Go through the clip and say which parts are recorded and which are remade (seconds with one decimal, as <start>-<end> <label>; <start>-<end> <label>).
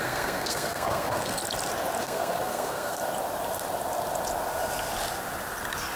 0.0-1.4 remade; 1.4-2.0 recorded; 2.0-3.0 remade; 3.0-6.0 recorded